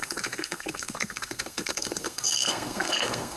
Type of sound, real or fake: fake